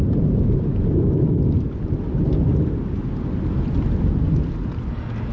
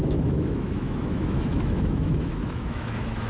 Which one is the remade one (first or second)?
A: second